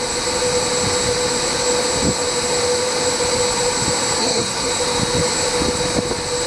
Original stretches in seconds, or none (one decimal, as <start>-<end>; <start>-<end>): 0.0-4.2; 4.7-6.5